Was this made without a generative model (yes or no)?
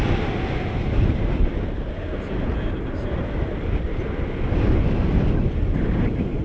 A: yes